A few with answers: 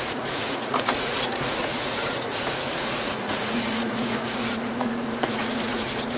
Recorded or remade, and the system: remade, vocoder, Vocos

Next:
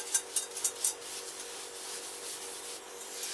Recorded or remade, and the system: recorded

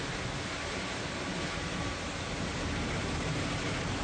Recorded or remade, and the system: recorded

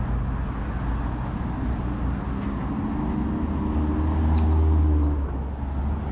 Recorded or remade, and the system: recorded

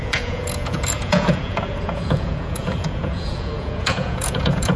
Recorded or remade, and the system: remade, vocoder, Vocos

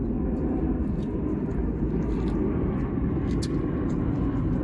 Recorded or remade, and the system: recorded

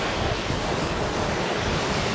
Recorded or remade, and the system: remade, codec, DAC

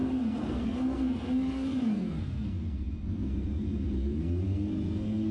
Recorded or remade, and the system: remade, codec, SNAC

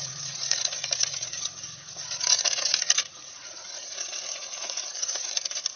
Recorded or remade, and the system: remade, vocoder, Vocos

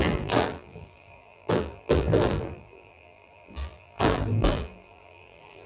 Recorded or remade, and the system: remade, vocoder, BigVGAN v2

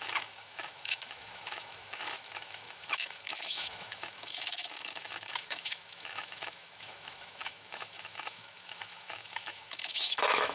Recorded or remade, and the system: remade, autoencoder, DAC-VAE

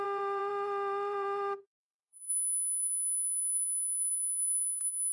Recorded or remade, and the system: remade, vocoder, BigVGAN v2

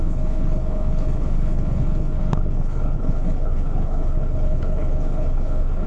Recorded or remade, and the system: remade, codec, HILCodec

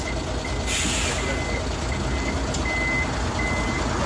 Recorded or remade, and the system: recorded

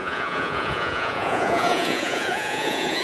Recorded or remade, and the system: remade, vocoder, Vocos